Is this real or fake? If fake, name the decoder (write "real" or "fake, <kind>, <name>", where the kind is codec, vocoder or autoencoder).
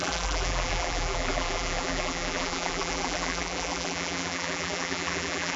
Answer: fake, vocoder, BigVGAN v2